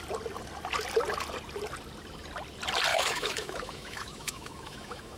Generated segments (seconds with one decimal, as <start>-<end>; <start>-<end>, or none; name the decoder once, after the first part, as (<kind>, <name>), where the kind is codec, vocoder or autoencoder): 2.9-5.2 (autoencoder, DAC-VAE)